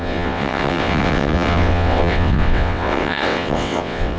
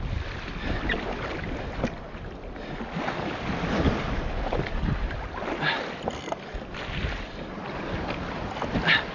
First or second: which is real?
second